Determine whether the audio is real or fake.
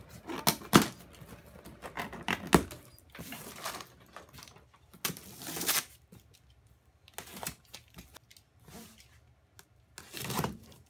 real